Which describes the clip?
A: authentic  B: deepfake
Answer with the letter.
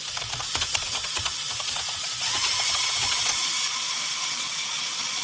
B